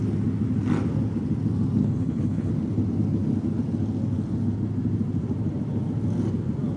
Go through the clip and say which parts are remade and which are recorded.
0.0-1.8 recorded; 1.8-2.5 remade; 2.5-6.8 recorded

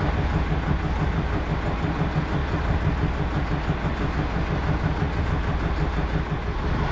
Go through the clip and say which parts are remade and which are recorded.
0.0-6.9 recorded

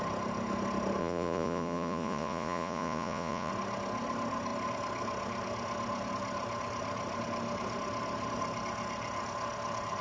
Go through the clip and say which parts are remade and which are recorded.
0.0-1.0 recorded; 1.0-3.5 remade; 3.5-10.0 recorded

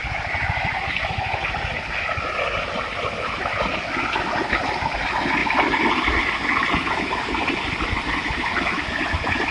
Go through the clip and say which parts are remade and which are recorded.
0.0-5.4 recorded; 5.4-6.0 remade; 6.0-9.5 recorded